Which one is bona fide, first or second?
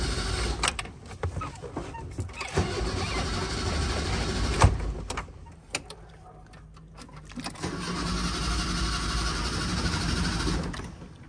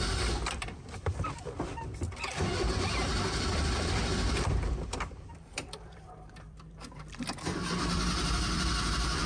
first